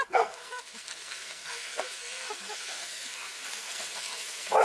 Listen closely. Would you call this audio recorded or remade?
remade